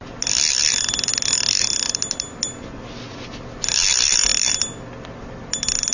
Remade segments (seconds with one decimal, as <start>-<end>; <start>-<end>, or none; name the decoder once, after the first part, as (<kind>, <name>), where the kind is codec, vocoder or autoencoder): none